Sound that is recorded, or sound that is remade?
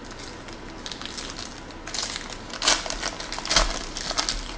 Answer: recorded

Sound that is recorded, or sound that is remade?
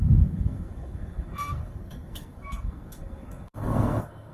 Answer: remade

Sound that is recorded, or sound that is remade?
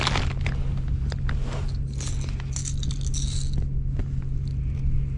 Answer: recorded